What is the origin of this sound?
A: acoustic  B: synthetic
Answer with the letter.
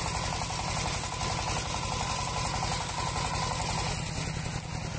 A